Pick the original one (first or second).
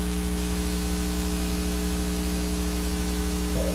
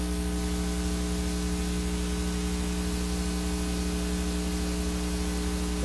second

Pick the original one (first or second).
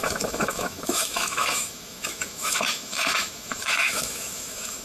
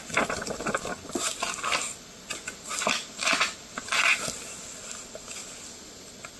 second